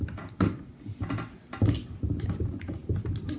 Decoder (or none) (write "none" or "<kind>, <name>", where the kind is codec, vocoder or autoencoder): none